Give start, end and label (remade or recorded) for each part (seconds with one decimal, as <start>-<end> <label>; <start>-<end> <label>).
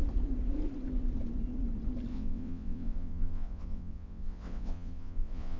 0.0-2.1 recorded; 2.1-5.6 remade